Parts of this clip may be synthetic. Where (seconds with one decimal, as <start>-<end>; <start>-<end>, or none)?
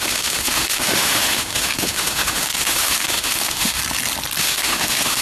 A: 0.0-3.8; 4.4-5.2